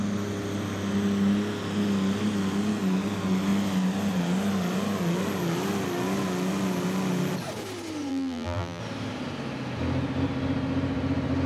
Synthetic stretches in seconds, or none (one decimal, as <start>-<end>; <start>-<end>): 8.1-8.8